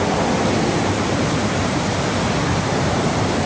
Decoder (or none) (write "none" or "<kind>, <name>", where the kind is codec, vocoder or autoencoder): vocoder, BigVGAN v2